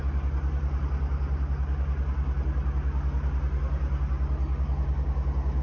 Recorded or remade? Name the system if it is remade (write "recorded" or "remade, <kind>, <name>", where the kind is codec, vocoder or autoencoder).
recorded